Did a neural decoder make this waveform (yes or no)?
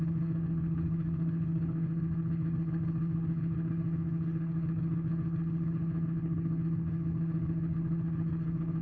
yes